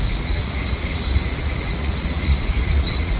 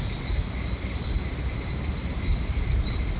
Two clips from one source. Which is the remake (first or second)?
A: first